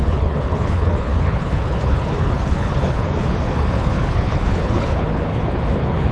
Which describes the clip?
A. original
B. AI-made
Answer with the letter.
B